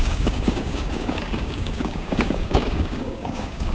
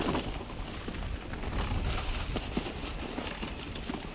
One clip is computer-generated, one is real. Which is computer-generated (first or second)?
first